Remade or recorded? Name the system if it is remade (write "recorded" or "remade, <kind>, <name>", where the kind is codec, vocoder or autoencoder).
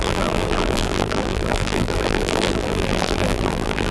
remade, vocoder, BigVGAN v2